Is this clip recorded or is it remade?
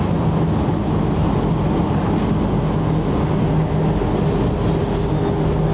recorded